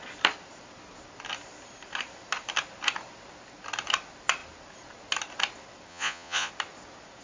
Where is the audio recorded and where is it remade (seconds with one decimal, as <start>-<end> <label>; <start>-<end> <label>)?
0.0-5.9 recorded; 5.9-6.5 remade; 6.5-7.2 recorded